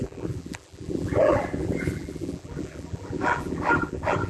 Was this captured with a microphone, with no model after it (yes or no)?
no